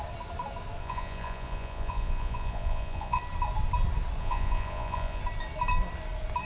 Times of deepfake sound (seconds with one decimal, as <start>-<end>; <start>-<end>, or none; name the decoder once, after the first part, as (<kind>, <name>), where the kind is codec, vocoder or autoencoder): 0.8-3.2 (vocoder, Vocos); 4.2-5.2